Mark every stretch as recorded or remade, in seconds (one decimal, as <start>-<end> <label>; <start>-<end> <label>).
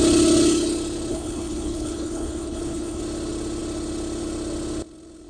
0.0-1.1 recorded; 1.1-3.0 remade; 3.0-5.3 recorded